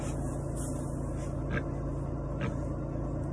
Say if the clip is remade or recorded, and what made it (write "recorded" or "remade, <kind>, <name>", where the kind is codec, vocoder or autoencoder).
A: recorded